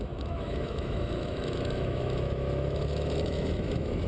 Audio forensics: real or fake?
fake